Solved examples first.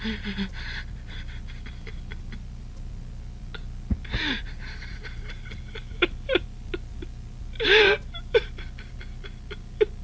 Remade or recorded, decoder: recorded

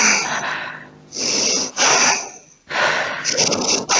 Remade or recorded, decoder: recorded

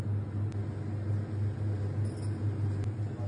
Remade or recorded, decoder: recorded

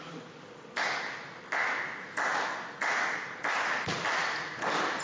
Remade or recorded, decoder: recorded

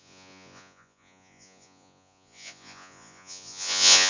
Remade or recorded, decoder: remade, vocoder, Vocos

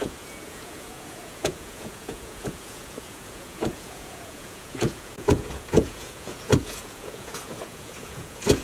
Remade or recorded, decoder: remade, vocoder, Vocos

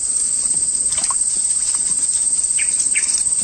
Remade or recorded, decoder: recorded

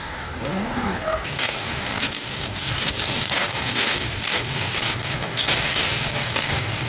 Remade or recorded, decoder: remade, codec, DAC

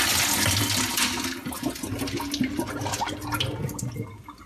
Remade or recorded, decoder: recorded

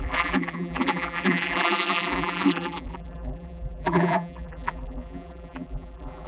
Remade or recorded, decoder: remade, vocoder, BigVGAN v2